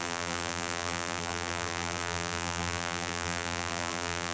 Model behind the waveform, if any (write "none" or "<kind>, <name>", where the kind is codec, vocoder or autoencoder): vocoder, BigVGAN v2